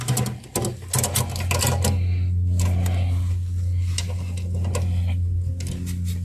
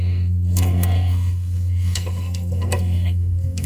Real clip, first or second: first